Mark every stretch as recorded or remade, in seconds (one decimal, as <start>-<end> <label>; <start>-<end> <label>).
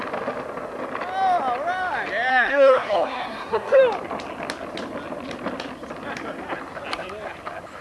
0.0-2.3 recorded; 2.3-3.8 remade; 3.8-7.8 recorded